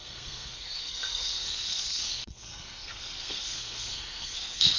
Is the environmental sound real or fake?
fake